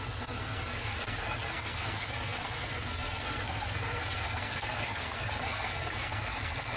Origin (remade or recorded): remade